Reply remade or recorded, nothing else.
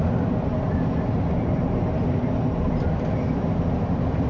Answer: recorded